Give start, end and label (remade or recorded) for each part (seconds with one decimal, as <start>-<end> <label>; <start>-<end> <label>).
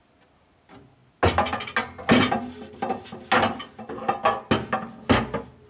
0.0-5.7 recorded